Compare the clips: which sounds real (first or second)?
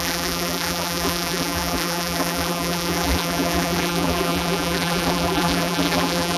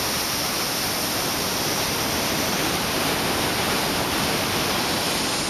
second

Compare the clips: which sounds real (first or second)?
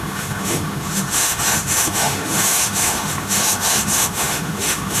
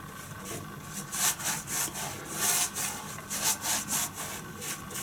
second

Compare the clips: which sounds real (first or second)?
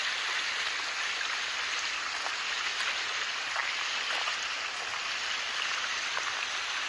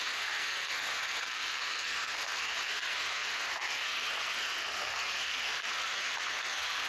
first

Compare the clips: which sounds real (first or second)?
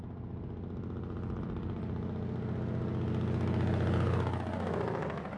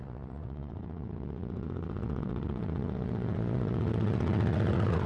first